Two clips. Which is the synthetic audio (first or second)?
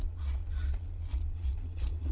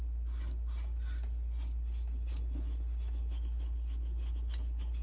first